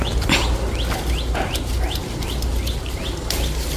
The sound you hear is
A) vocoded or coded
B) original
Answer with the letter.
B